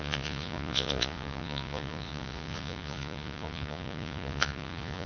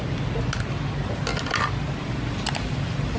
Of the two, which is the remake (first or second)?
first